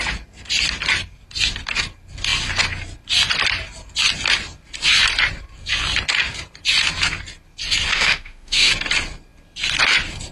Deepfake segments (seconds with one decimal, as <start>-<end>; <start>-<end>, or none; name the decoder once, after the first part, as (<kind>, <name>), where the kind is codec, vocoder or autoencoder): 7.9-8.7 (autoencoder, DAC-VAE)